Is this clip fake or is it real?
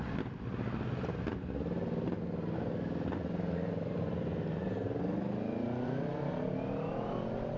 real